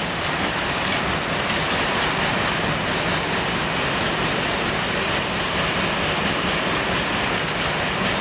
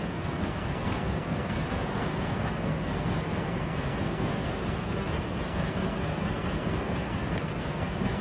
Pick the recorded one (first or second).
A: first